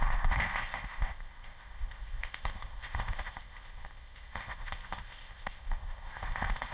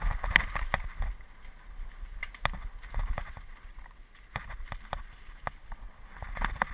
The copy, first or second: first